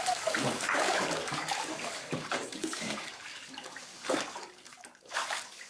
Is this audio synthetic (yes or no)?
yes